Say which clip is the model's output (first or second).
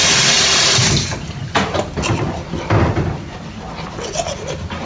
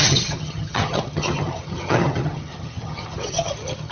second